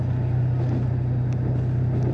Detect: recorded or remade recorded